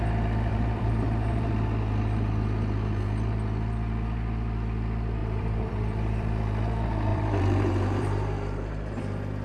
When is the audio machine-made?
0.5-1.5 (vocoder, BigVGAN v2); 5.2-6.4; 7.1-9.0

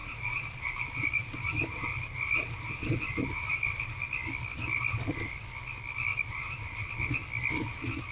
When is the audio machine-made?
0.0-4.0 (vocoder, BigVGAN v2); 6.1-6.9

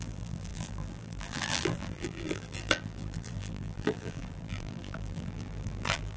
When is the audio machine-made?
0.0-6.2 (vocoder, BigVGAN v2)

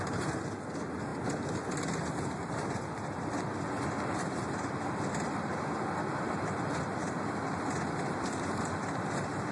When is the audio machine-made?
7.0-7.7 (vocoder, BigVGAN v2)